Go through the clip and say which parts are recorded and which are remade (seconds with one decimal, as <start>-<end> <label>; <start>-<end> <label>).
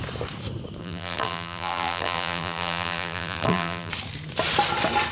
0.0-0.8 recorded; 0.8-3.9 remade; 3.9-5.1 recorded